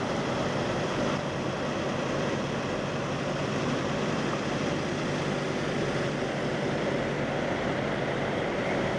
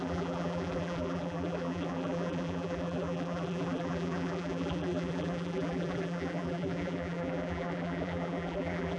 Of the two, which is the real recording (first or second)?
first